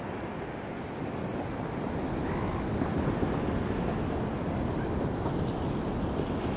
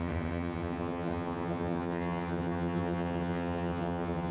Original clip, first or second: first